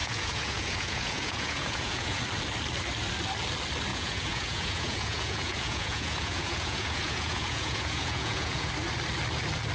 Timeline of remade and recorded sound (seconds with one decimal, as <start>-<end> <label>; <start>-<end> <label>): 0.0-2.2 remade; 2.2-3.9 recorded; 3.9-8.7 remade; 8.7-9.7 recorded